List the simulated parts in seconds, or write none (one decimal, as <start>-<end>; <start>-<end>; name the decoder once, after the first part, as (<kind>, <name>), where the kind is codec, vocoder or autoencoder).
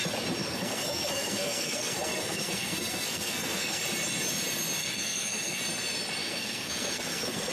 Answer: 0.4-3.8 (codec, SNAC); 4.8-5.6; 6.2-7.5